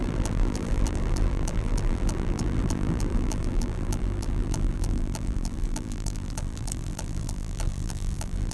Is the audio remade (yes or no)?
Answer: yes